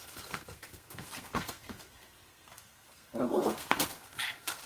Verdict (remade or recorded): remade